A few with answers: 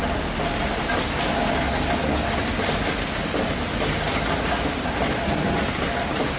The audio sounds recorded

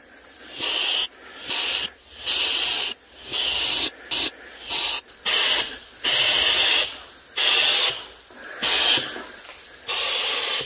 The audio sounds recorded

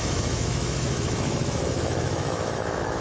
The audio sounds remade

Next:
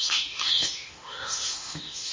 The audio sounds remade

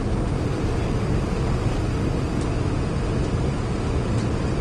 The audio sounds recorded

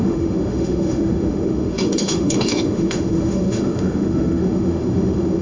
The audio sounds remade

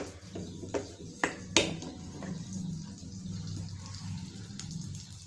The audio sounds recorded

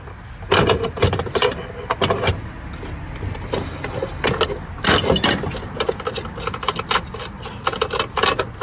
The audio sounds recorded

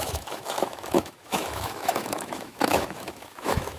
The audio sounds remade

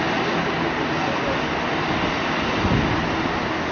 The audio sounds recorded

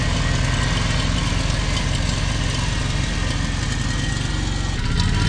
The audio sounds recorded